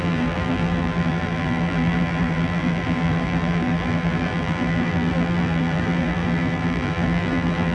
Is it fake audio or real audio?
fake